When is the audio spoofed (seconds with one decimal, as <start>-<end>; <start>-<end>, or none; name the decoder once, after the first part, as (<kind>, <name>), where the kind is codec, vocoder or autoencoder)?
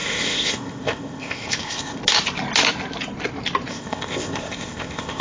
0.0-2.0 (codec, ZipCodec); 3.7-5.2